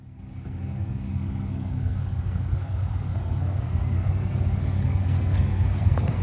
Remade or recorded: remade